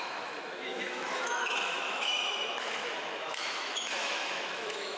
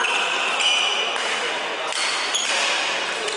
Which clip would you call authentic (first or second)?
second